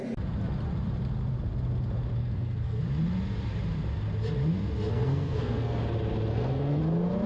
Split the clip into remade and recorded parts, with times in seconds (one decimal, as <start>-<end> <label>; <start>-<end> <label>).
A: 0.0-2.2 recorded; 2.2-2.8 remade; 2.8-4.9 recorded; 4.9-5.8 remade; 5.8-6.3 recorded; 6.3-6.8 remade; 6.8-7.3 recorded